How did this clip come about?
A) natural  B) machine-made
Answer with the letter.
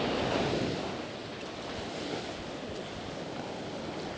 A